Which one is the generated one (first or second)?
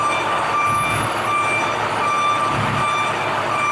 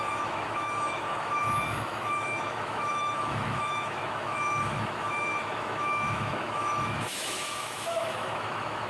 second